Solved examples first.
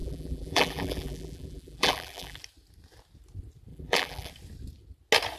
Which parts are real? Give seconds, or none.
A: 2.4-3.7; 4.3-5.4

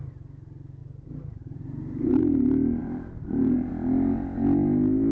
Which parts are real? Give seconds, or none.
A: 0.0-0.8; 2.2-2.8; 3.7-5.1

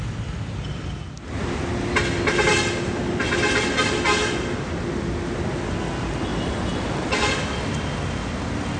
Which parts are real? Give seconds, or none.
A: 0.0-6.3; 7.3-8.8

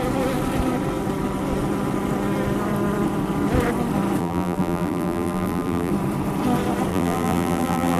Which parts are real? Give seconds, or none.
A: 0.0-4.2; 5.9-6.9

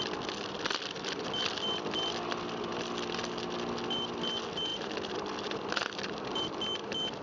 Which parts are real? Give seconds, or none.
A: 0.0-4.7; 6.6-7.2